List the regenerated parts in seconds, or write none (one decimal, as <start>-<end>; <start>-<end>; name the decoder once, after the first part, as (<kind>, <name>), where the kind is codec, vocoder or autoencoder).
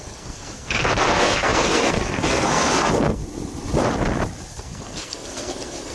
0.0-3.2 (codec, SNAC); 4.5-5.9